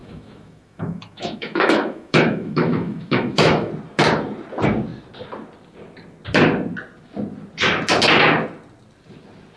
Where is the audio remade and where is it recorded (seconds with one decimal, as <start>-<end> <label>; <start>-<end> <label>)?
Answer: 0.0-3.7 remade; 3.7-9.6 recorded